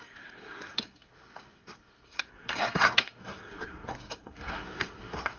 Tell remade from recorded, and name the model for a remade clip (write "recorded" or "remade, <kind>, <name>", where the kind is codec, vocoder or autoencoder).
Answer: remade, codec, SNAC